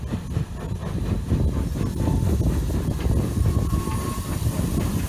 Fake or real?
real